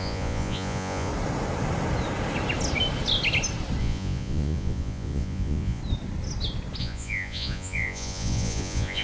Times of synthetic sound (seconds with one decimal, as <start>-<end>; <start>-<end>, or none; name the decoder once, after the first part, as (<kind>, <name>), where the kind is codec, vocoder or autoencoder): 0.0-1.1 (vocoder, Vocos); 3.8-5.8; 6.8-9.0